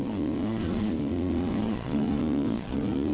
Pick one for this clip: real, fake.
fake